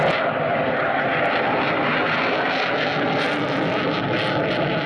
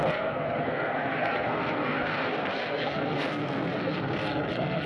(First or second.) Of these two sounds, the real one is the first